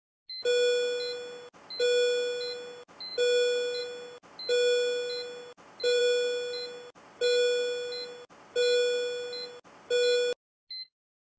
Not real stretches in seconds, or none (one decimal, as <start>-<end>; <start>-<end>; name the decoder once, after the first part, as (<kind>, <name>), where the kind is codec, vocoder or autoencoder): none